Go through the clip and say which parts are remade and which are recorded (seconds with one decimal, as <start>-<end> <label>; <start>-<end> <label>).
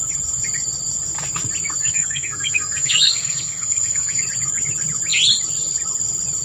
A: 0.0-1.8 recorded; 1.8-4.2 remade; 4.2-6.4 recorded